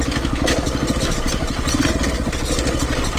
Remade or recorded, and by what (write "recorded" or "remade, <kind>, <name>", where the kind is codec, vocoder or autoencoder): recorded